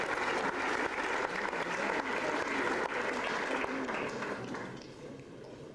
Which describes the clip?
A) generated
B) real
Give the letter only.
B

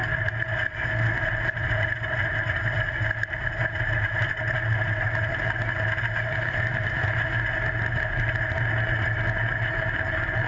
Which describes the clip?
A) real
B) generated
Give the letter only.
A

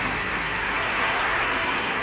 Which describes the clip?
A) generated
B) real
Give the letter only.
A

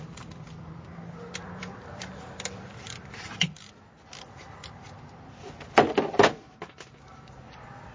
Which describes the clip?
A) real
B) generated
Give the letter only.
B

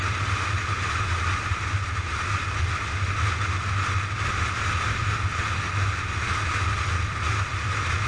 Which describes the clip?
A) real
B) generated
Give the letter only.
A